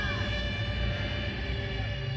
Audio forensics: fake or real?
real